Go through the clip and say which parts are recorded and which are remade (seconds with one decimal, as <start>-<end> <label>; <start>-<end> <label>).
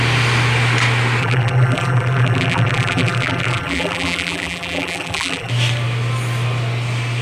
0.0-1.2 recorded; 1.2-5.5 remade; 5.5-7.2 recorded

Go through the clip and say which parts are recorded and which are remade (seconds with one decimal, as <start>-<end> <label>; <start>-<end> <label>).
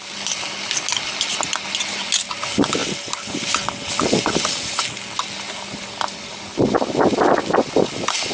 0.0-8.3 recorded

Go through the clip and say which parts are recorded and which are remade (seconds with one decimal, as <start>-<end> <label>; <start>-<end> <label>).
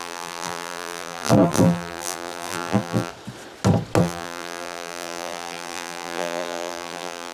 0.0-3.1 remade; 3.1-4.0 recorded; 4.0-7.3 remade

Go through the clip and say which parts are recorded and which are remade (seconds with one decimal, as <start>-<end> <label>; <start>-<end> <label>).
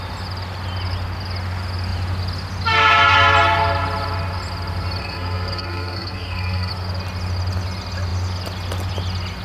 0.0-5.0 recorded; 5.0-6.7 remade; 6.7-9.4 recorded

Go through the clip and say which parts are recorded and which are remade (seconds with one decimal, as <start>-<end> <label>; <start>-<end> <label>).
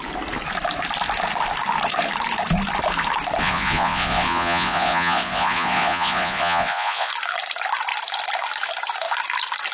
0.0-3.4 recorded; 3.4-7.1 remade; 7.1-9.7 recorded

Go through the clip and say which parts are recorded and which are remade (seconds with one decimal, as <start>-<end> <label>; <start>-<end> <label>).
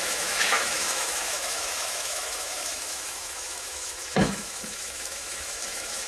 0.0-6.1 remade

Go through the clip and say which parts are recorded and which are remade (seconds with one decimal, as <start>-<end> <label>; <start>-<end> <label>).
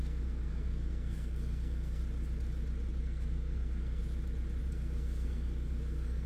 0.0-2.0 remade; 2.0-3.0 recorded; 3.0-4.0 remade; 4.0-4.7 recorded; 4.7-6.3 remade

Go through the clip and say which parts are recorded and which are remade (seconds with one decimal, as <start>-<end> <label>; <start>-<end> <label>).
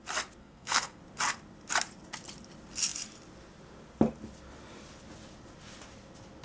0.0-0.4 recorded; 0.4-1.0 remade; 1.0-6.4 recorded